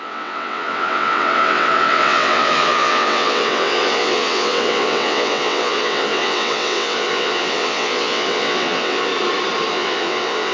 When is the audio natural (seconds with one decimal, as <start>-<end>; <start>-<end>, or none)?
9.1-9.7